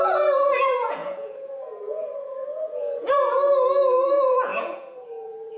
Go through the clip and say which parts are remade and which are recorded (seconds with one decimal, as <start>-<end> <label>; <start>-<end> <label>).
0.0-5.6 remade

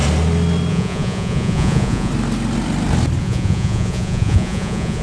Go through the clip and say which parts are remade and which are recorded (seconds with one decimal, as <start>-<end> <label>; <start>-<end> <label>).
0.0-0.7 recorded; 0.7-2.1 remade; 2.1-3.2 recorded; 3.2-5.0 remade

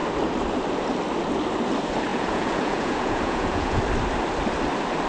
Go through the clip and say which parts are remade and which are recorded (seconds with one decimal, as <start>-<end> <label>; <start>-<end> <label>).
0.0-2.1 recorded; 2.1-3.8 remade; 3.8-5.1 recorded

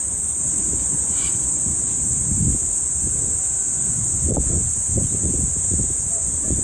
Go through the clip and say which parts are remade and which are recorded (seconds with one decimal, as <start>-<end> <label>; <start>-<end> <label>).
0.0-1.7 remade; 1.7-3.7 recorded; 3.7-6.6 remade

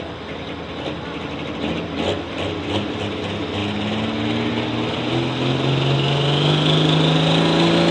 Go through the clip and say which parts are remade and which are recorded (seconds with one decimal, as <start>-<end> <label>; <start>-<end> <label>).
0.0-7.9 recorded

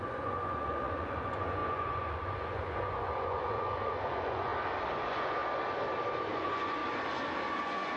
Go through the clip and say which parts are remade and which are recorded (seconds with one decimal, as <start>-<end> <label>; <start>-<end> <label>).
0.0-4.5 remade; 4.5-5.0 recorded; 5.0-5.4 remade; 5.4-6.3 recorded; 6.3-6.8 remade; 6.8-7.6 recorded; 7.6-8.0 remade

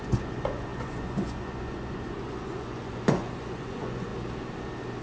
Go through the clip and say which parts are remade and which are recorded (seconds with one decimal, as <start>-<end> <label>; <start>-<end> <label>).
0.0-4.1 remade; 4.1-5.0 recorded